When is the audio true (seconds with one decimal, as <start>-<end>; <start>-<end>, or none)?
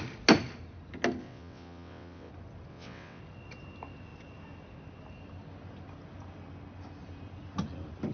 0.0-1.2; 2.3-2.7; 3.2-8.1